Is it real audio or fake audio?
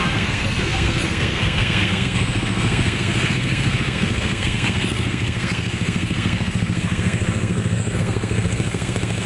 fake